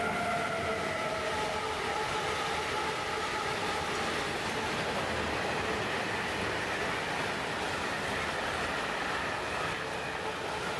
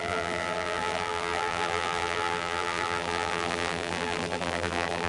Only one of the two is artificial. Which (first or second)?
second